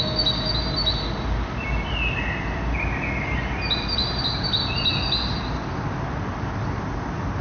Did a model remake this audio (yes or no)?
no